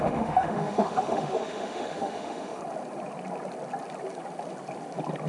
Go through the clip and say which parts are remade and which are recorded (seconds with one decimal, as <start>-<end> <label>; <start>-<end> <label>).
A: 0.0-2.6 remade; 2.6-5.3 recorded